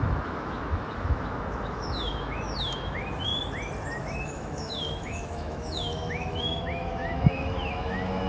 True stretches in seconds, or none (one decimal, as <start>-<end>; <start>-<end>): 3.3-4.0